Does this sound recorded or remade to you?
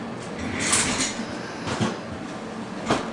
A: recorded